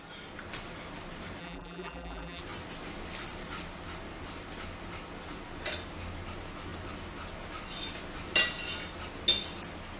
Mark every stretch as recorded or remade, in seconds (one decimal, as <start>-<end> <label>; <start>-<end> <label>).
0.0-1.4 recorded; 1.4-2.4 remade; 2.4-10.0 recorded